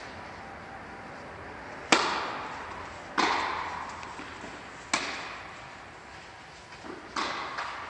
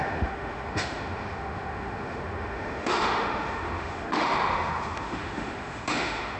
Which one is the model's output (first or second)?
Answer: second